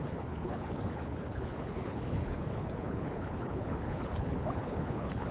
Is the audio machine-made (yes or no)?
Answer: yes